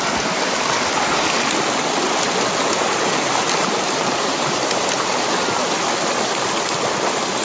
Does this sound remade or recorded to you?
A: recorded